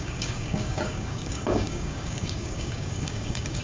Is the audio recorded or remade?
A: remade